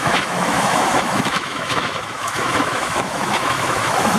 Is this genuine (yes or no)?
no